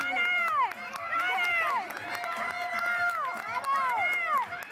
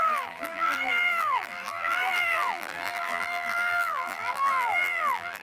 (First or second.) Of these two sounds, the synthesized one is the second